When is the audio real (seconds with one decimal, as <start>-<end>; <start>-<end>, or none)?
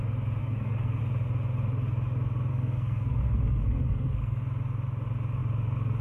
0.0-0.4; 1.0-2.5; 4.4-6.0